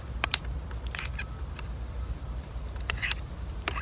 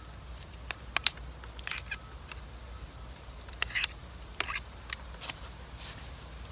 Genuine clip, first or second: second